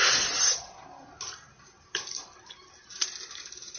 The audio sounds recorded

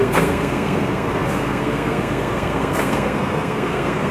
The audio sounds remade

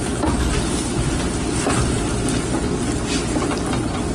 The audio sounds recorded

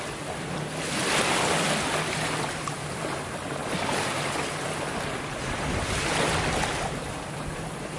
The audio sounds recorded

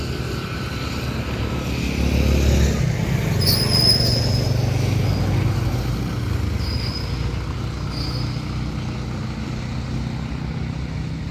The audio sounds recorded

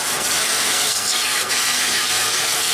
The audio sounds remade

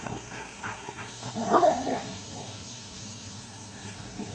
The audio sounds remade